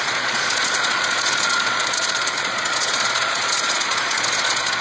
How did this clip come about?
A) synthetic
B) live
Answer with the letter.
A